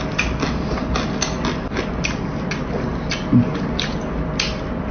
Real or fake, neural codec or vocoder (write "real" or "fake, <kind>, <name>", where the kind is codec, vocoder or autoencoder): real